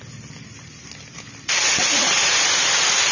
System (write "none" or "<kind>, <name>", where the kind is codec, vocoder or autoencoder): none